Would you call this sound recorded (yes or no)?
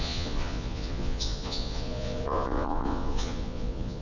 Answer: no